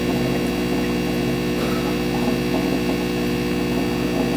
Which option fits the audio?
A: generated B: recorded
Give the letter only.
B